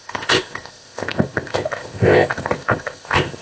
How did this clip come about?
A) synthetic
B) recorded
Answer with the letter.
A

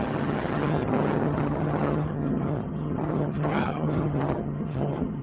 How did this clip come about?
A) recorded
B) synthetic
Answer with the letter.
B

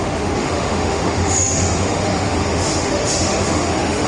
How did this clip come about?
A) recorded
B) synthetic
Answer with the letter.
B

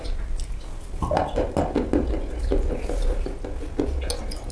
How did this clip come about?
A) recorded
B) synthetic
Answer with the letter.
A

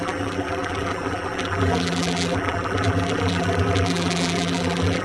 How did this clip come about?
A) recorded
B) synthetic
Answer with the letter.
B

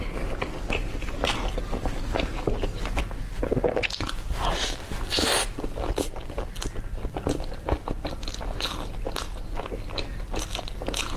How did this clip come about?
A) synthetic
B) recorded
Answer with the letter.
B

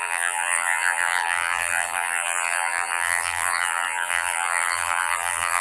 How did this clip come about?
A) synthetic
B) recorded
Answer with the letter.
A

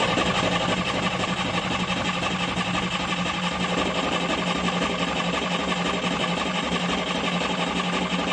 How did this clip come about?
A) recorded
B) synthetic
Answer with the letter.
A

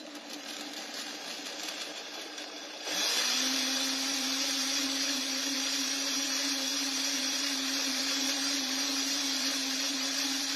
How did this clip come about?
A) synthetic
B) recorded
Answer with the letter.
A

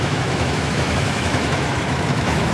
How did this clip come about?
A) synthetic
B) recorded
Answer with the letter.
A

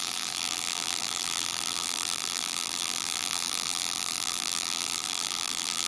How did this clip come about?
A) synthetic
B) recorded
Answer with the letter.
A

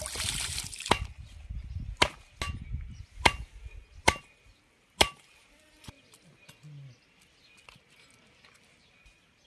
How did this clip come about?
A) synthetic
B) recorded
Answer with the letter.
B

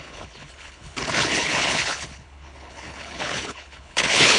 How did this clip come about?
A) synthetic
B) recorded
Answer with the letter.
A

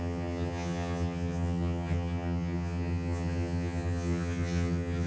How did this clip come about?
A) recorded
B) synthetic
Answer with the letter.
B